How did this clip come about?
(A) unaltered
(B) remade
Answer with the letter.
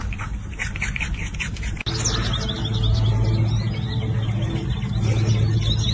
A